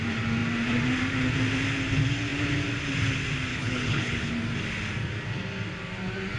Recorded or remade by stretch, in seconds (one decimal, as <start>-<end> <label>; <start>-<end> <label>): 0.0-3.5 recorded; 3.5-4.3 remade; 4.3-6.4 recorded